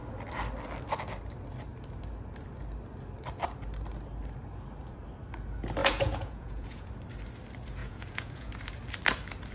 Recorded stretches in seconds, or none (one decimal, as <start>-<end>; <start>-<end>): 0.0-5.8; 6.9-7.8; 8.5-9.5